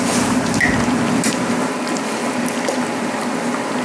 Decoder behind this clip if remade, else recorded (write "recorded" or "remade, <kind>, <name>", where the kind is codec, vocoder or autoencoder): recorded